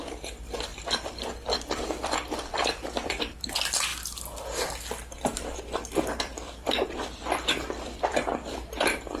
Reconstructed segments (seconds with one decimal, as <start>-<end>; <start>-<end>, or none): 0.0-0.7; 1.7-3.9; 6.2-9.2

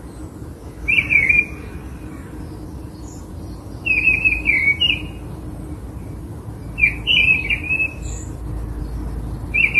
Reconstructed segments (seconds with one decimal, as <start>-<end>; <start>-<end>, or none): none

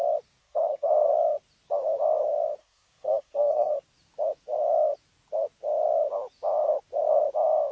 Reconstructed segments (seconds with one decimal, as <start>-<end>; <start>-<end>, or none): 0.4-0.9; 2.6-3.7

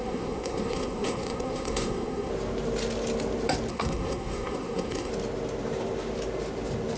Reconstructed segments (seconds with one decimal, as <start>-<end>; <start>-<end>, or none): 0.0-2.3; 3.7-5.1

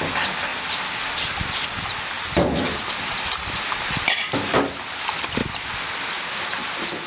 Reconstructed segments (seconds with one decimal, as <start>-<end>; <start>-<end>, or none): none

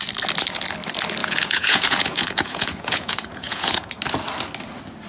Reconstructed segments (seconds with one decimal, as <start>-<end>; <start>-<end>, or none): 1.2-3.9

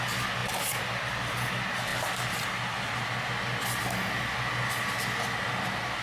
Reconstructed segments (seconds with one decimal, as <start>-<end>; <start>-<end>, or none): none